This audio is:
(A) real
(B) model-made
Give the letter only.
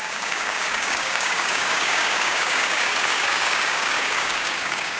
B